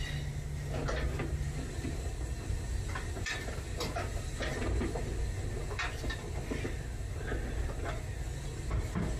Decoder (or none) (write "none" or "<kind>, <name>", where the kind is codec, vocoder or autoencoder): none